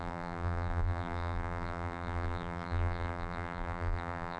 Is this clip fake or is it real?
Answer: fake